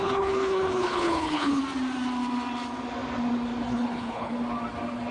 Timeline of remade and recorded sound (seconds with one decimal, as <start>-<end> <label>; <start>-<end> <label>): 0.0-1.6 remade; 1.6-3.7 recorded; 3.7-4.3 remade; 4.3-5.1 recorded